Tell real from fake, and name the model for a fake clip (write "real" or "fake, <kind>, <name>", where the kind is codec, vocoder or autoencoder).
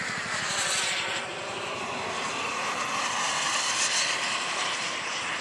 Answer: real